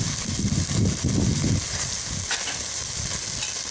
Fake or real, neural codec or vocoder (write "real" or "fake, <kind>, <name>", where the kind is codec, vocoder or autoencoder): real